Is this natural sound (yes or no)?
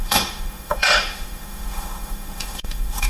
no